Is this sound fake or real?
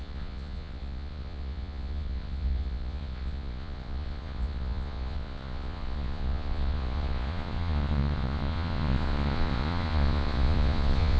fake